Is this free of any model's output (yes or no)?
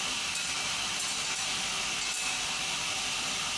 yes